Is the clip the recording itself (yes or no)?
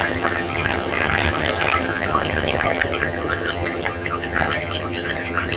no